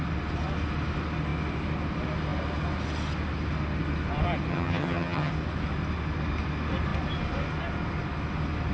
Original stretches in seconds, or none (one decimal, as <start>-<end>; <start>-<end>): 0.0-4.5; 5.3-8.7